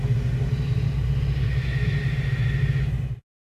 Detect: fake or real real